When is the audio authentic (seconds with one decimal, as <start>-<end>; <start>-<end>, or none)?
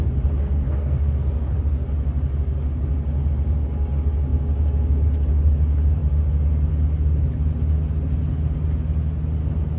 0.0-0.4; 1.6-9.8